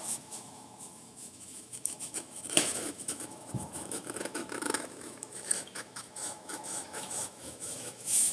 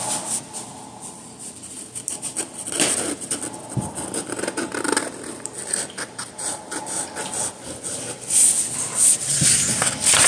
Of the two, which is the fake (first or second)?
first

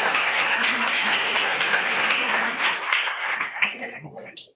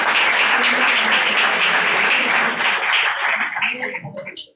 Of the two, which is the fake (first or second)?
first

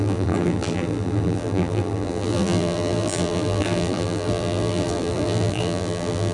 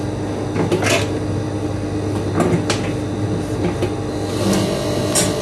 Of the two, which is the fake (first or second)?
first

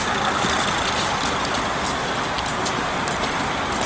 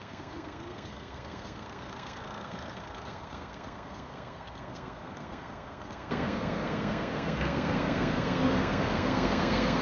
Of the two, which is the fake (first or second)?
second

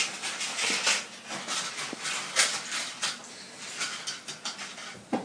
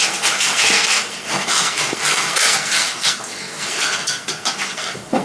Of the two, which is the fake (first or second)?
second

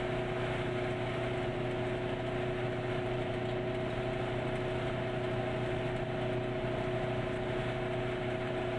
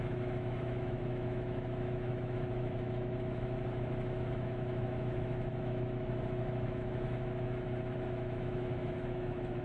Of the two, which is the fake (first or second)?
second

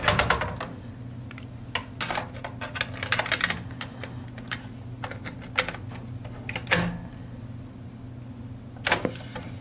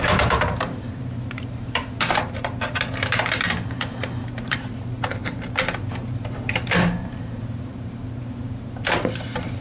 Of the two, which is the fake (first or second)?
second